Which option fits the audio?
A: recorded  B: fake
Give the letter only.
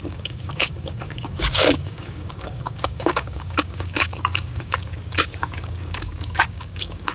B